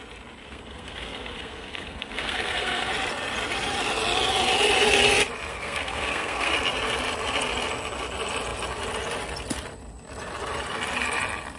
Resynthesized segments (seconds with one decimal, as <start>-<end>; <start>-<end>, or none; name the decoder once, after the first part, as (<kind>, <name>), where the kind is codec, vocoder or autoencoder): 0.4-2.9 (codec, SNAC); 5.5-6.5